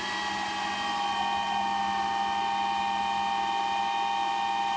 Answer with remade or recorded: recorded